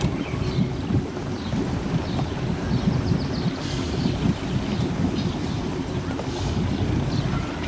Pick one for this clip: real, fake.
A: fake